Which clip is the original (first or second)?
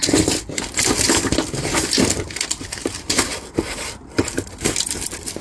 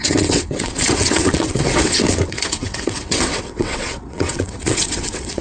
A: first